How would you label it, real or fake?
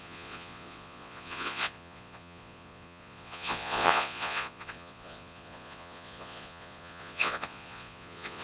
fake